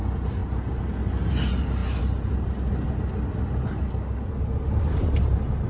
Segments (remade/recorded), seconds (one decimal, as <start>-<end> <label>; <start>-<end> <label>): 0.0-5.7 recorded